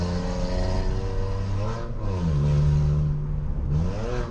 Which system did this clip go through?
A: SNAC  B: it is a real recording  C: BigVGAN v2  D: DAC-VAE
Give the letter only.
B